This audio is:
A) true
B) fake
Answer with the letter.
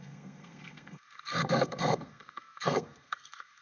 B